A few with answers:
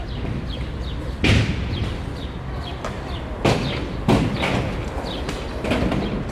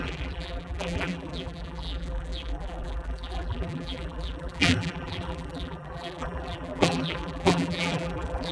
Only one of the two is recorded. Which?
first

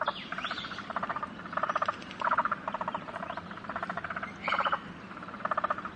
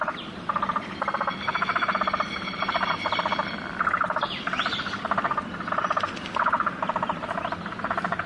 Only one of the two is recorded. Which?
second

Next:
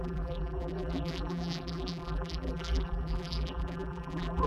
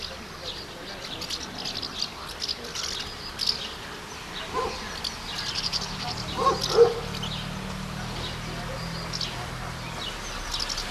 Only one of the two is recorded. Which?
second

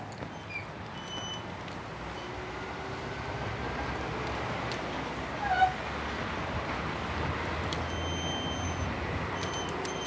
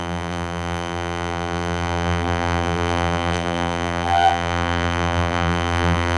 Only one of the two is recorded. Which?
first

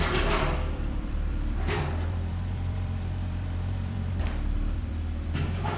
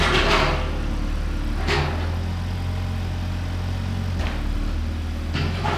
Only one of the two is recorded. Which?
second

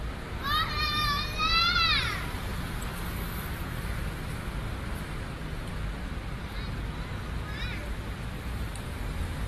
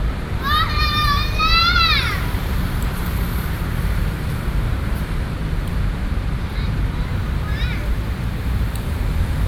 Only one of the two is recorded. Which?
first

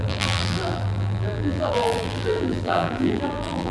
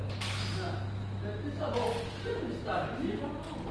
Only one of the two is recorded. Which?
second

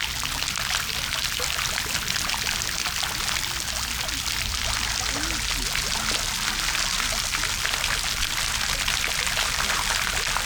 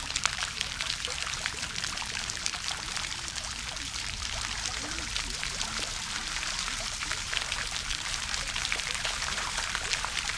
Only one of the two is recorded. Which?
first